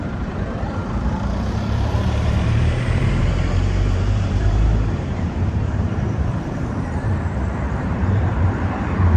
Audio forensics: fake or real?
fake